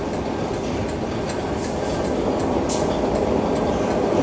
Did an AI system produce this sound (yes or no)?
no